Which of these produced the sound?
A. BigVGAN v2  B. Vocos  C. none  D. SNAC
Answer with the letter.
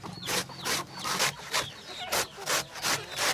C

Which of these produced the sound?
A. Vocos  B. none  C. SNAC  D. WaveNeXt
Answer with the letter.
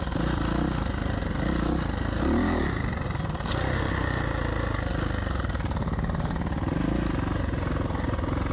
B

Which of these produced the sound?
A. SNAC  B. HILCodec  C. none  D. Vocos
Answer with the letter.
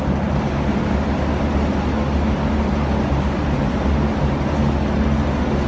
C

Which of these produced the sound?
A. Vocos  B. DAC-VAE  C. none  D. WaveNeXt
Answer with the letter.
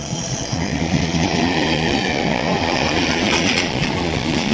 A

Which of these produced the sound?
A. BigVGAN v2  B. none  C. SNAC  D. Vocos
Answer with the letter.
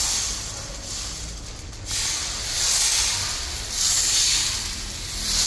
B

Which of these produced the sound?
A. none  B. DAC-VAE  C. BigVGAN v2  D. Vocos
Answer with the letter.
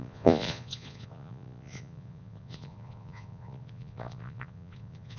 D